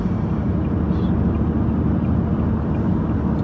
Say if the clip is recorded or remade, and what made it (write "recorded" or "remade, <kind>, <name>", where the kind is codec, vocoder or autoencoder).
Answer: recorded